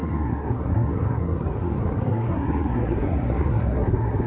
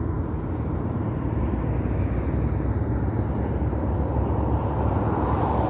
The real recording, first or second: second